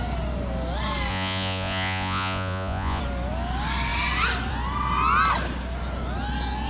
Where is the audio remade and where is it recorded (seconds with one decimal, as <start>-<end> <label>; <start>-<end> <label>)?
0.0-1.1 recorded; 1.1-3.0 remade; 3.0-6.7 recorded